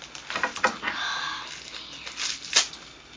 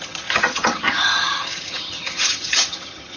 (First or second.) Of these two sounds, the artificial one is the second